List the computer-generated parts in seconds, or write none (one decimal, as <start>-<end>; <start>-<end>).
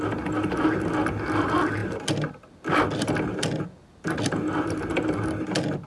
none